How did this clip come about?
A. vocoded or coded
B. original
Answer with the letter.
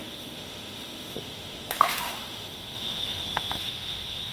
A